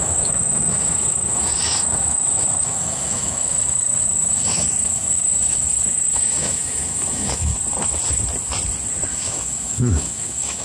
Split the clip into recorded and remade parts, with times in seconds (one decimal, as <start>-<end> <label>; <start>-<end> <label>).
0.0-7.5 remade; 7.5-9.1 recorded; 9.1-10.6 remade